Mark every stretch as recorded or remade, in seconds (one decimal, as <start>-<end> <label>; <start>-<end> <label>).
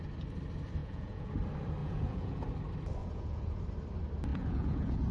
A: 0.0-0.8 recorded; 0.8-1.3 remade; 1.3-1.8 recorded; 1.8-2.4 remade; 2.4-3.0 recorded; 3.0-3.6 remade; 3.6-4.3 recorded; 4.3-5.1 remade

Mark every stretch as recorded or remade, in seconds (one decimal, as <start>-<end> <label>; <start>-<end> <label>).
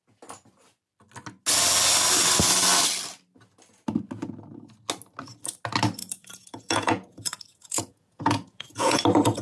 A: 0.0-6.0 recorded; 6.0-9.0 remade; 9.0-9.4 recorded